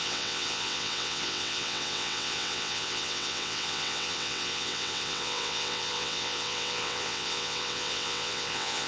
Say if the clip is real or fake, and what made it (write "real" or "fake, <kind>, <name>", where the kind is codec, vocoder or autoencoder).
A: fake, vocoder, WaveNeXt